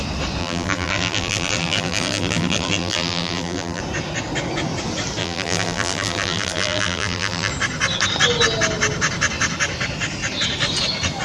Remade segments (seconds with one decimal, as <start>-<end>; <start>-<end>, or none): 0.4-3.8; 5.2-7.5